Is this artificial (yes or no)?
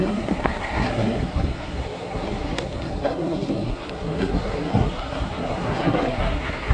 yes